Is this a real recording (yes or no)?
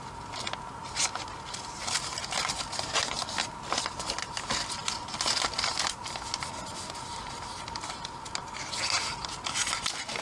yes